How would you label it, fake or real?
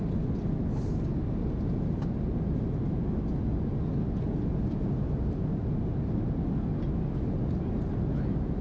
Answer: real